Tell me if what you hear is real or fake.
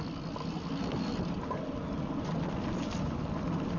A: real